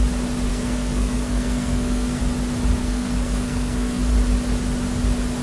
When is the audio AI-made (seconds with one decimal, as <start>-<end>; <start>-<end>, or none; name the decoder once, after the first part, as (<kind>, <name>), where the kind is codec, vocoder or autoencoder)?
0.5-2.2 (codec, SNAC); 2.8-4.0